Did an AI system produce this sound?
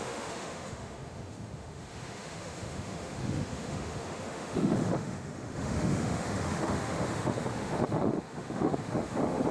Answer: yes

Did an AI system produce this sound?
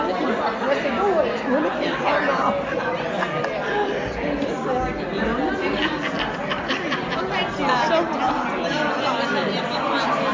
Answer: no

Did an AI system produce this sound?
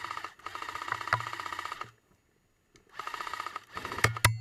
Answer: no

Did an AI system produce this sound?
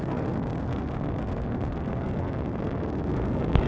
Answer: yes